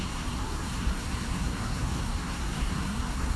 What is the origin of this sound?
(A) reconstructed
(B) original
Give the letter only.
A